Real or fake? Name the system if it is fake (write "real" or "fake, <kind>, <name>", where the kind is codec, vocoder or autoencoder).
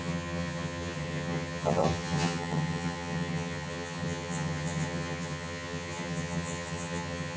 fake, vocoder, HiFi-GAN